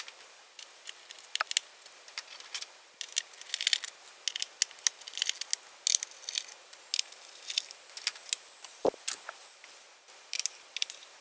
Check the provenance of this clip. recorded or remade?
recorded